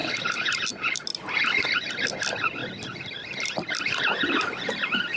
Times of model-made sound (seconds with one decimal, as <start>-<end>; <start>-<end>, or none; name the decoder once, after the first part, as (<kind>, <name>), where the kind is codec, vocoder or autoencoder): none